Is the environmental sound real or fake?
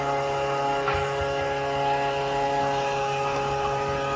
real